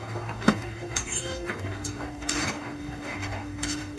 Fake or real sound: fake